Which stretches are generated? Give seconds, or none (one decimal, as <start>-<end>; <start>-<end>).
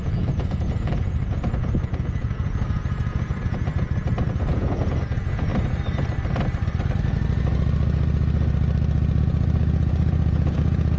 0.0-5.5; 9.2-11.0